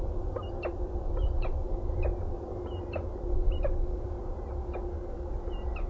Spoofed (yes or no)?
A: no